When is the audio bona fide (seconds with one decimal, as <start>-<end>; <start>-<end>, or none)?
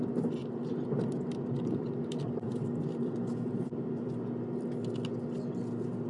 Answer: 0.0-0.4; 4.1-6.1